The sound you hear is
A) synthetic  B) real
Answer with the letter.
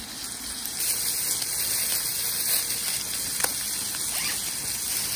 B